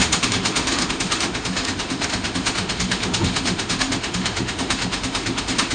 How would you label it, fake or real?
fake